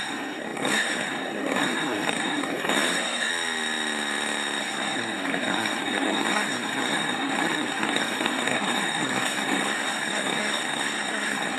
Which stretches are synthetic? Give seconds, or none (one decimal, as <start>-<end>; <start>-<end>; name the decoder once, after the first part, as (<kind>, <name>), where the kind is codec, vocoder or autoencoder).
0.0-3.3 (codec, SNAC); 4.6-11.6